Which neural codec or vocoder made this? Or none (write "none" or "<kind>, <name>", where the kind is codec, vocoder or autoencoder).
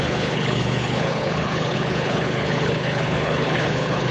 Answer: codec, HILCodec